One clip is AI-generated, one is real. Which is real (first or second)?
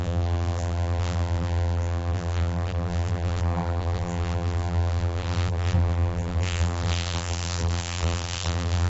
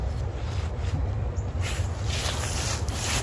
second